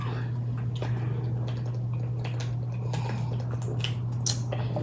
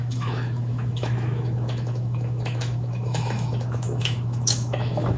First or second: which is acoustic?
first